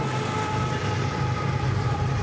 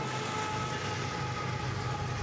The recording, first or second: second